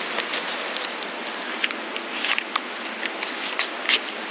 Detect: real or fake real